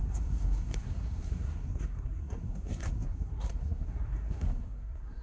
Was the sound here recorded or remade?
remade